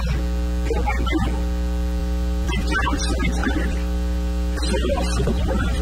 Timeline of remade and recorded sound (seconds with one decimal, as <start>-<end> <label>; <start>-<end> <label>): 0.0-2.0 recorded; 2.0-3.0 remade; 3.0-3.4 recorded; 3.4-5.8 remade